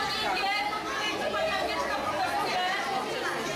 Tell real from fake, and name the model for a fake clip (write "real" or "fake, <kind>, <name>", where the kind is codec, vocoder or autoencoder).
real